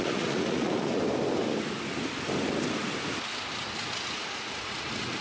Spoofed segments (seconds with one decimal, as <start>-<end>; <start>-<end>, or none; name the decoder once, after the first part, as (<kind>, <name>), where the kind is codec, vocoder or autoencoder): 0.0-1.0 (vocoder, Vocos); 3.6-5.2